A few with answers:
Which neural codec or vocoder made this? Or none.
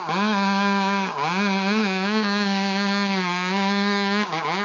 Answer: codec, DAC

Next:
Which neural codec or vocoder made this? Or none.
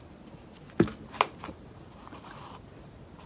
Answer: none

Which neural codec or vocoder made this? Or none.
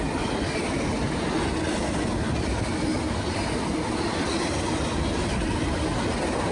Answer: none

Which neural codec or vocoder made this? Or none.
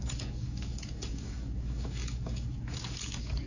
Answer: codec, DAC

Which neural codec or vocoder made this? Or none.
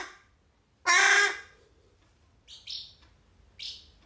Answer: none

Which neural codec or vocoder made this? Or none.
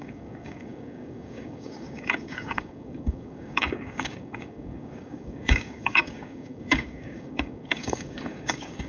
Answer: codec, DAC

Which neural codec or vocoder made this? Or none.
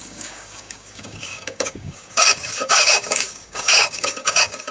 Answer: codec, DAC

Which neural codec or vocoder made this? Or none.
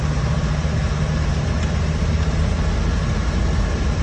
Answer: none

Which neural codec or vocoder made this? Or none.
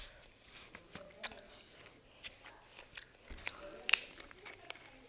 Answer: none